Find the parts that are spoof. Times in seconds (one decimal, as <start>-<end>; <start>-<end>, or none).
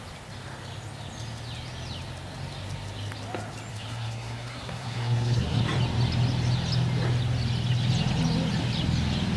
3.7-5.6